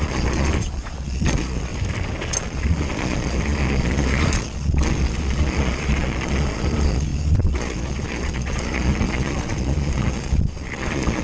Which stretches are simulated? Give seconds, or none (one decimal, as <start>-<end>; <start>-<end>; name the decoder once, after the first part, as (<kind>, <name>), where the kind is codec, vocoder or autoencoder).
0.0-1.7 (vocoder, Vocos); 2.4-11.2